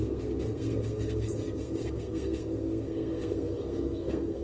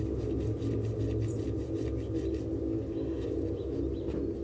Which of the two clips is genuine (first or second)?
second